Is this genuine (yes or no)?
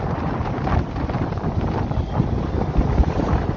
yes